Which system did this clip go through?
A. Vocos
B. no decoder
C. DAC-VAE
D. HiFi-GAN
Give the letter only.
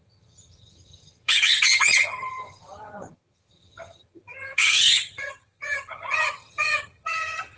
D